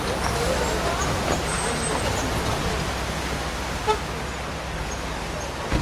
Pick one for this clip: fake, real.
real